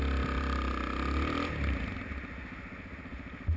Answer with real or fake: real